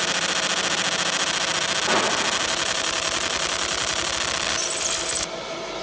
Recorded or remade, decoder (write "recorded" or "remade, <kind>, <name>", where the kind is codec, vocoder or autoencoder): recorded